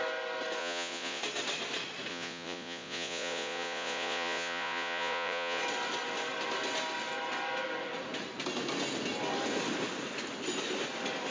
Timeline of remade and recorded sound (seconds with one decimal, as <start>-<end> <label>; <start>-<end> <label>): 0.0-0.6 recorded; 0.6-1.2 remade; 1.2-2.1 recorded; 2.1-5.6 remade; 5.6-11.3 recorded